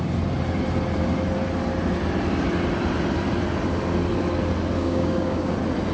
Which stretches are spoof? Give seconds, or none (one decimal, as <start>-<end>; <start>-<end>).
4.8-5.5